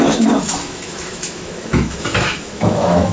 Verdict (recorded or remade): remade